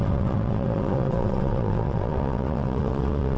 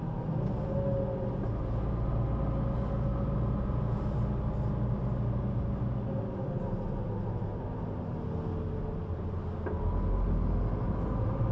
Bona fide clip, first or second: second